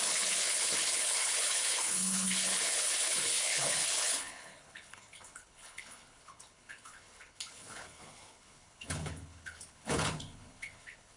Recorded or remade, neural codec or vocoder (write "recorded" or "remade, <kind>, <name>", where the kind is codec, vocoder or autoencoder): remade, codec, HILCodec